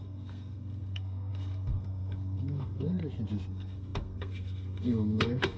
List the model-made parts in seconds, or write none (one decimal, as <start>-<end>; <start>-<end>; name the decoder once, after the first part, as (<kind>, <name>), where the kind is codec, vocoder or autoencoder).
0.0-3.0 (codec, SNAC); 3.5-5.6

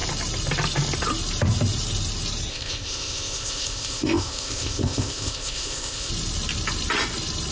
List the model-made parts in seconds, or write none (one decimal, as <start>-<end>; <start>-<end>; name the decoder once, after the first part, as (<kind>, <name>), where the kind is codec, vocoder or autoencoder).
2.5-6.1 (codec, ZipCodec)

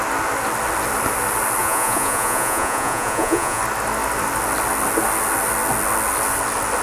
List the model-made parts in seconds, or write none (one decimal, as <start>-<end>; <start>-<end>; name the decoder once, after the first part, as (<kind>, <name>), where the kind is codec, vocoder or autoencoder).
1.6-3.6 (vocoder, Vocos)

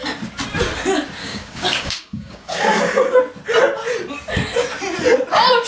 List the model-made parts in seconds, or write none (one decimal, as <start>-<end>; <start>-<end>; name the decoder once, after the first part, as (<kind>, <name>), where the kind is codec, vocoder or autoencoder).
1.2-3.2 (codec, DAC)

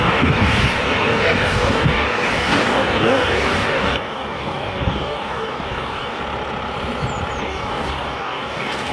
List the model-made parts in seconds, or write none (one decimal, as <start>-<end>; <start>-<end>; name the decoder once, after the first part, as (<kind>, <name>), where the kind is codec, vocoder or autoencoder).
0.0-6.2 (codec, DAC); 7.4-8.9

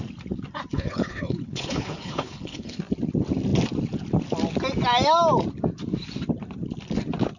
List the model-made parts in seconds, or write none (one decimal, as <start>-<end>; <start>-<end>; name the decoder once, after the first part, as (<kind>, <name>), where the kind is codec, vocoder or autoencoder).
0.7-2.8 (codec, HILCodec)

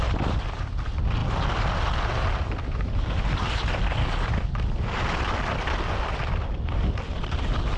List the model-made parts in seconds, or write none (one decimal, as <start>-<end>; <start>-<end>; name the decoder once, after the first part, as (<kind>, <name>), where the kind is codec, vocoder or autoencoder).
none

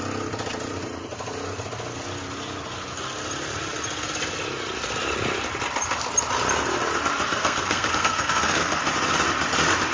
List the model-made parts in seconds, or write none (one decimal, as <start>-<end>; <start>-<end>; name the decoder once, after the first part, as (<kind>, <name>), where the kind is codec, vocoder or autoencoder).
7.3-8.8 (codec, SNAC)